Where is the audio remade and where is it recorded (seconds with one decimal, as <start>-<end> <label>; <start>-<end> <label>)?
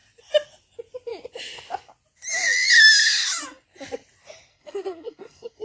0.0-4.5 recorded; 4.5-5.6 remade